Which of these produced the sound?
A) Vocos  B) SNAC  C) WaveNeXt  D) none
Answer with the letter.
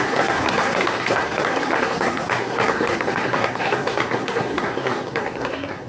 B